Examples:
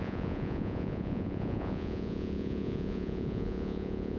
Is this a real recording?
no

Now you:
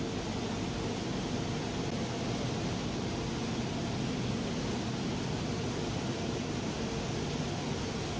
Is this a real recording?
yes